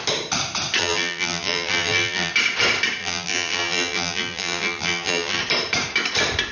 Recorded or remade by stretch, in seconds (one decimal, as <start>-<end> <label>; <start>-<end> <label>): 0.0-0.8 recorded; 0.8-2.3 remade; 2.3-3.0 recorded; 3.0-5.4 remade; 5.4-6.5 recorded